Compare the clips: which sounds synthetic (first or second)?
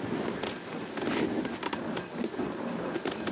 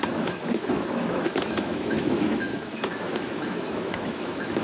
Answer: second